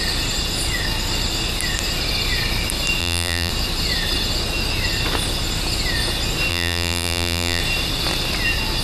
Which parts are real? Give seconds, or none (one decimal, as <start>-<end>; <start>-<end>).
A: 0.0-3.0; 3.5-6.5; 7.6-8.8